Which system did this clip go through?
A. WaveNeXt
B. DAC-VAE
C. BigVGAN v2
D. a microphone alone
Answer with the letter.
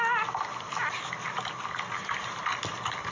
D